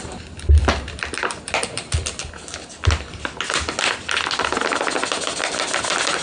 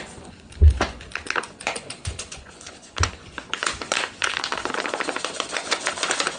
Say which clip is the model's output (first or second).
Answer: second